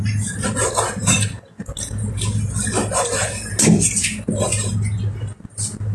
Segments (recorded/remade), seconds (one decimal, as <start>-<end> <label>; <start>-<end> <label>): 0.0-5.9 recorded